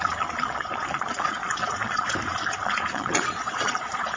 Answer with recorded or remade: remade